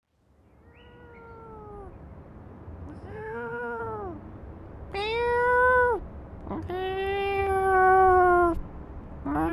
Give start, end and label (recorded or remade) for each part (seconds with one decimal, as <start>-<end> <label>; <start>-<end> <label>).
0.0-3.1 recorded; 3.1-3.8 remade; 3.8-9.5 recorded